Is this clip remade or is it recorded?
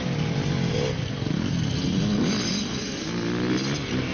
recorded